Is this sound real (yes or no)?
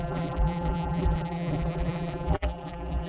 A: no